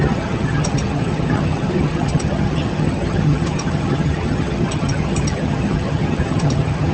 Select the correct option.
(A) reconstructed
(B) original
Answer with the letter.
A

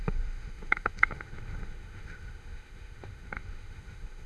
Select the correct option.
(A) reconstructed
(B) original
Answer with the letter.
A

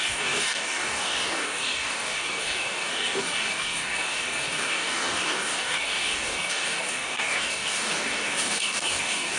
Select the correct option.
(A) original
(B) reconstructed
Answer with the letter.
B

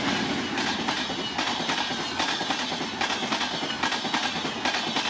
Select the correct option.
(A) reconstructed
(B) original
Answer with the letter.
B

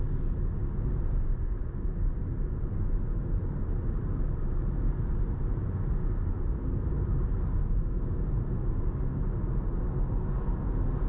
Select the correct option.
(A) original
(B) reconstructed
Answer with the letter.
A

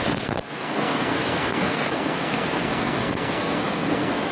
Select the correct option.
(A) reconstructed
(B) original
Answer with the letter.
A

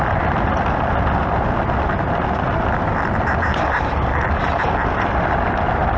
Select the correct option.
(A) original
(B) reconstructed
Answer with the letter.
A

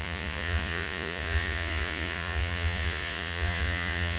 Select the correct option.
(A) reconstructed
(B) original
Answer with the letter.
A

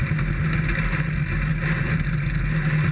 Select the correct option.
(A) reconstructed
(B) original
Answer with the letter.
B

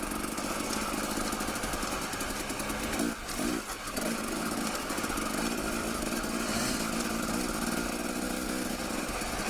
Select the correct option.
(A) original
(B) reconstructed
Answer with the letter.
A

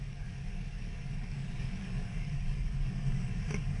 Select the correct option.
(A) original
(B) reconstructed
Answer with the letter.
B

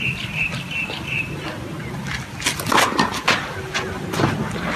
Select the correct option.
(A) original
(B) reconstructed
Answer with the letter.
A